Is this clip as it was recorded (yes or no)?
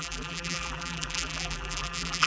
no